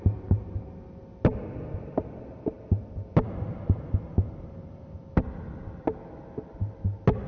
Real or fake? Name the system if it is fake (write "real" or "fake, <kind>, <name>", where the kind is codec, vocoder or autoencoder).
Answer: real